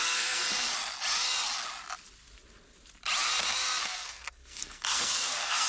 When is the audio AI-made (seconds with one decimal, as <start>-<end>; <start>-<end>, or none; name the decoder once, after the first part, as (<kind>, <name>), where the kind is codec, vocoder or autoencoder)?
0.0-0.4 (codec, SNAC); 3.8-5.7